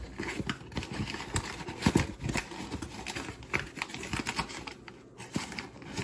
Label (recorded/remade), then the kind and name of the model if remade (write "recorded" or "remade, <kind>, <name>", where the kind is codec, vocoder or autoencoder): recorded